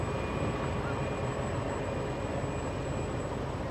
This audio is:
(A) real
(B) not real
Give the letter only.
A